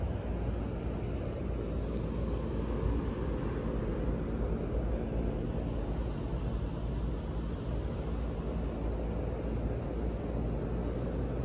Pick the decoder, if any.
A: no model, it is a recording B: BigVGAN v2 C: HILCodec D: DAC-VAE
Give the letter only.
A